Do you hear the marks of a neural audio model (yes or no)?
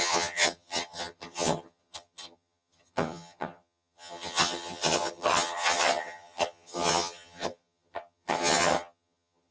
yes